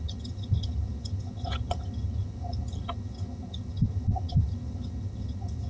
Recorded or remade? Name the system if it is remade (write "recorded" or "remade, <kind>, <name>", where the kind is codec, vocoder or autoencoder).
remade, vocoder, HiFi-GAN